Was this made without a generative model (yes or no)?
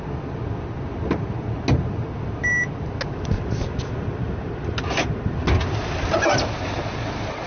yes